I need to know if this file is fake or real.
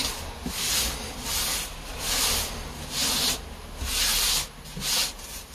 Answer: real